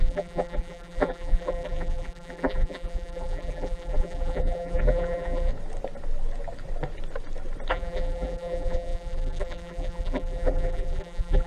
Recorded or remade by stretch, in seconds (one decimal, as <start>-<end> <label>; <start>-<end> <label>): 0.0-5.5 remade; 5.5-7.7 recorded; 7.7-11.5 remade